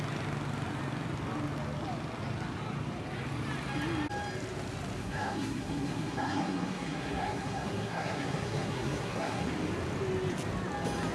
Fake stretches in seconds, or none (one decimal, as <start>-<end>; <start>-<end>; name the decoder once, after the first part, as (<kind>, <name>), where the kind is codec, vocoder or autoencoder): 5.0-9.4 (codec, SNAC)